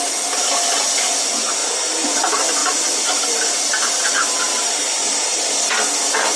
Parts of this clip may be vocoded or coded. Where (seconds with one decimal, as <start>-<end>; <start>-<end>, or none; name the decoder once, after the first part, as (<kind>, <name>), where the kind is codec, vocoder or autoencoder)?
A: 1.6-2.2 (vocoder, BigVGAN v2); 4.5-5.7